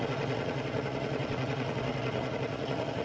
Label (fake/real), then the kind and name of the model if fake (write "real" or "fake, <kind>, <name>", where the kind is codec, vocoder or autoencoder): fake, vocoder, Vocos